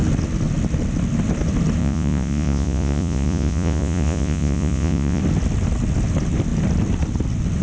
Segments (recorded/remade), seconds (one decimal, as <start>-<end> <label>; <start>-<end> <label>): 0.0-1.8 recorded; 1.8-5.2 remade; 5.2-7.6 recorded